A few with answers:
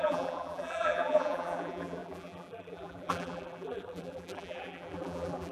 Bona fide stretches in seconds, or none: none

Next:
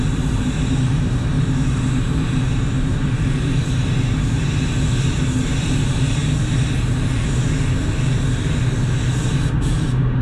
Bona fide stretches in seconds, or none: 6.2-9.2

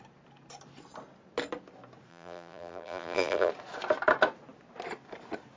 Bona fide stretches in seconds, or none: 0.0-2.1; 3.5-5.6

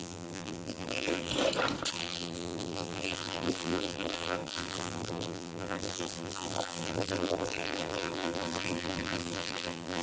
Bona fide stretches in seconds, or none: 1.3-1.9